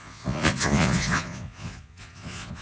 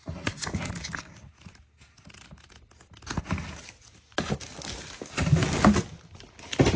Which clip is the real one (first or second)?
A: second